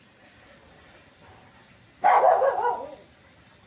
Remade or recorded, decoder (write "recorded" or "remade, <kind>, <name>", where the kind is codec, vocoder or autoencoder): recorded